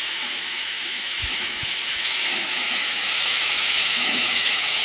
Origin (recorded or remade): remade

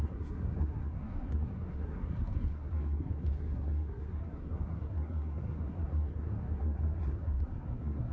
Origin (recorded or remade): remade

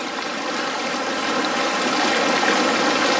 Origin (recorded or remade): recorded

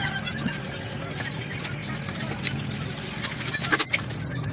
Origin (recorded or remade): recorded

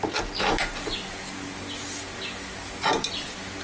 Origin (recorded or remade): recorded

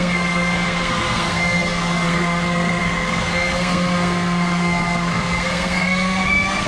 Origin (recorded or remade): remade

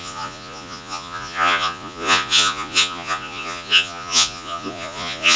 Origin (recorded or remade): remade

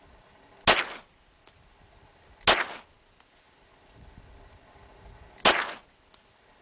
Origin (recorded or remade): recorded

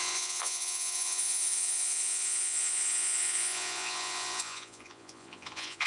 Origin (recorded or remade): remade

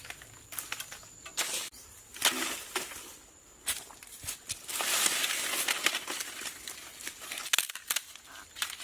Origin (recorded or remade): recorded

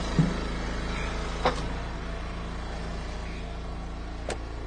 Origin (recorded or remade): recorded